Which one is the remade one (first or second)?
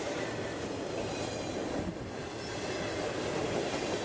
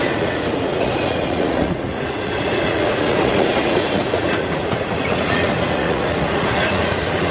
second